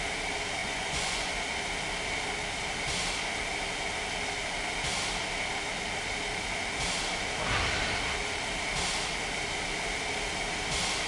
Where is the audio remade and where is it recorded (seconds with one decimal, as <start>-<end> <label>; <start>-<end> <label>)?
0.0-0.6 recorded; 0.6-1.3 remade; 1.3-11.1 recorded